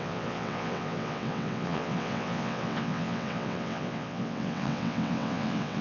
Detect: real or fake fake